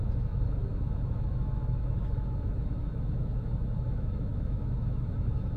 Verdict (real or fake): fake